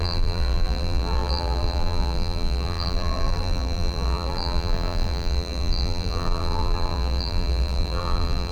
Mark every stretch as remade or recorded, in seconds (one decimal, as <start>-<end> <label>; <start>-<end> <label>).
0.0-8.5 remade

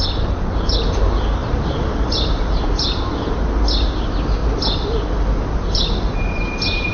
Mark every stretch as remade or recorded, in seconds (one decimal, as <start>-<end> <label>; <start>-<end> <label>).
0.0-1.4 recorded; 1.4-2.6 remade; 2.6-6.9 recorded

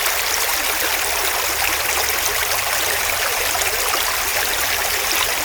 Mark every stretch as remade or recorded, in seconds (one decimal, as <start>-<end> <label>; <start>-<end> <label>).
0.0-2.4 recorded; 2.4-3.1 remade; 3.1-5.4 recorded

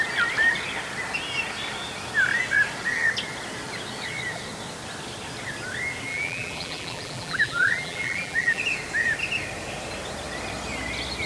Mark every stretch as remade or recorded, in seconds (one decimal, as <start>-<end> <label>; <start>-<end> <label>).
0.0-6.1 recorded; 6.1-8.6 remade; 8.6-11.3 recorded

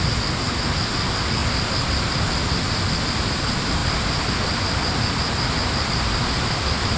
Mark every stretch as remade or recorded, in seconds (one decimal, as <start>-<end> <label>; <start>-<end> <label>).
0.0-1.4 recorded; 1.4-3.1 remade; 3.1-3.8 recorded; 3.8-5.9 remade; 5.9-7.0 recorded

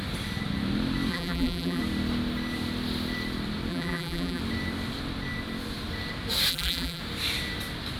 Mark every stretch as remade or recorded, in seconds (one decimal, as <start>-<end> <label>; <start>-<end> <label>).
0.0-1.1 recorded; 1.1-1.8 remade; 1.8-3.7 recorded; 3.7-4.4 remade; 4.4-6.5 recorded; 6.5-7.0 remade; 7.0-8.0 recorded

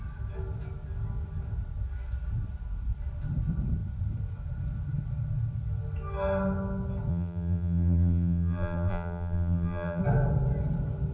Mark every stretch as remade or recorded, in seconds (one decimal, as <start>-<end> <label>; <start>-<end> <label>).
0.0-7.1 recorded; 7.1-10.0 remade; 10.0-11.1 recorded